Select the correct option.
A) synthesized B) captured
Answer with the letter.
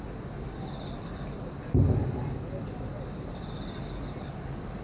B